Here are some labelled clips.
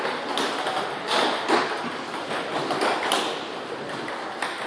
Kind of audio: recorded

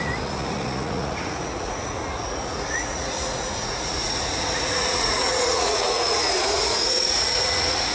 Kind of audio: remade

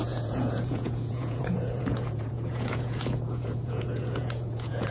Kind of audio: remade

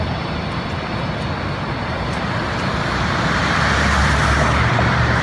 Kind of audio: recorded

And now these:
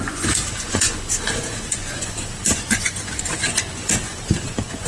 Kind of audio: remade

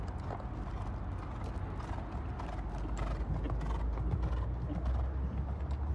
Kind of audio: recorded